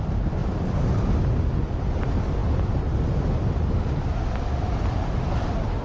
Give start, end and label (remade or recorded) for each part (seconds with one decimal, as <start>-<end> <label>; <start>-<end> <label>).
0.0-5.8 recorded